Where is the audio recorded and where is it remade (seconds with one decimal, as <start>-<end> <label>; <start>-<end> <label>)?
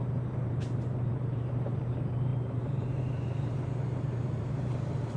0.0-5.2 remade